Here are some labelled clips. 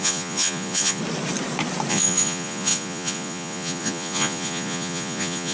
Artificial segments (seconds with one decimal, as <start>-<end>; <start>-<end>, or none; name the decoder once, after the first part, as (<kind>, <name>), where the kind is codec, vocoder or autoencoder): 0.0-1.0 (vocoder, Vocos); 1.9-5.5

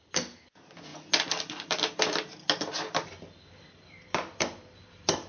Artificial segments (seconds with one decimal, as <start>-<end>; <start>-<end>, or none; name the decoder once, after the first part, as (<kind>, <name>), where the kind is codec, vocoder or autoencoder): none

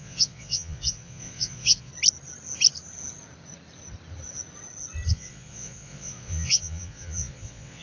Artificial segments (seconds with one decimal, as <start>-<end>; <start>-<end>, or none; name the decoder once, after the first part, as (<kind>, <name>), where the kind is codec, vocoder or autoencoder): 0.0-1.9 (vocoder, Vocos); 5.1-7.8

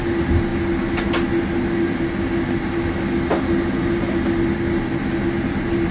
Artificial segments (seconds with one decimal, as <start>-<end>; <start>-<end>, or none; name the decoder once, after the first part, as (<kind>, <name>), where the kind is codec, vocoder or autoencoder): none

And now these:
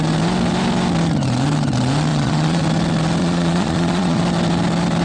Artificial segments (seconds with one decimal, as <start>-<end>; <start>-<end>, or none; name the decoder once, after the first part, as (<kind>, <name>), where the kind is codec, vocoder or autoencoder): 2.1-2.6 (vocoder, Vocos); 3.2-4.2

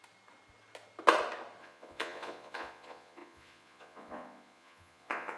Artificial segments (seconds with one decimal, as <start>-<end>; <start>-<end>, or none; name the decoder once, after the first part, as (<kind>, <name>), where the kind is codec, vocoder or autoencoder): 1.6-5.4 (vocoder, Vocos)